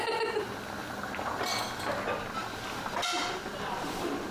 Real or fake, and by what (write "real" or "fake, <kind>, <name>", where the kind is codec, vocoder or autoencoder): real